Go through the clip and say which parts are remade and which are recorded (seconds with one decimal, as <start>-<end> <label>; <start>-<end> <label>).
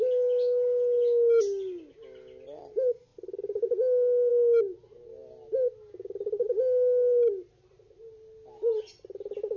0.0-9.6 recorded